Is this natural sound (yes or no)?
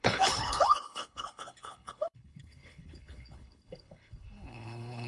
no